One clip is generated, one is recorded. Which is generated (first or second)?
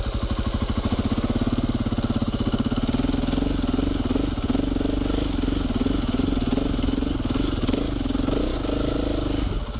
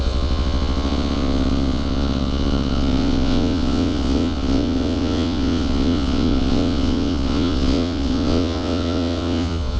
second